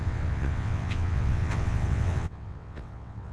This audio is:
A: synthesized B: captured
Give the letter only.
A